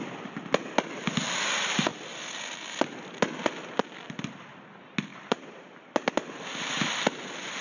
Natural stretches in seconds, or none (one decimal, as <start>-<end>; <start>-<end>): 0.0-7.6